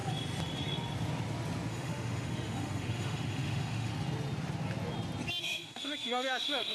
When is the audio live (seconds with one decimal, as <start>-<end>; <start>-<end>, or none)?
0.0-1.7; 3.9-5.4